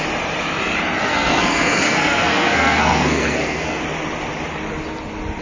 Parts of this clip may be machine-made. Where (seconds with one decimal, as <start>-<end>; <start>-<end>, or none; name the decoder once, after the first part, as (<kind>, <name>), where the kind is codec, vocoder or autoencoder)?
1.0-3.8 (codec, SNAC)